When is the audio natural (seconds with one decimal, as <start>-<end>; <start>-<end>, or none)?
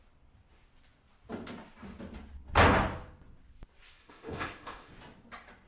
0.0-4.0; 4.9-5.7